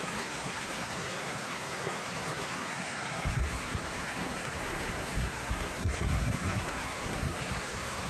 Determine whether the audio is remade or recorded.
remade